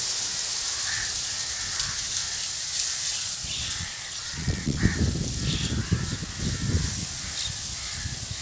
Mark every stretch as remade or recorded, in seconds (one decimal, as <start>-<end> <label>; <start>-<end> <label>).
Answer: 0.0-3.1 recorded; 3.1-4.8 remade; 4.8-8.4 recorded